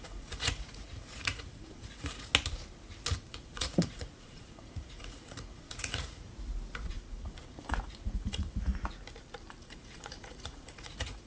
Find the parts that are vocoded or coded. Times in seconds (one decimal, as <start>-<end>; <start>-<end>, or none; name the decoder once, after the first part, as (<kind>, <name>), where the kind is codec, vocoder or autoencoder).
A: 0.0-2.3 (vocoder, Vocos); 3.3-6.3; 6.9-8.7; 9.6-11.3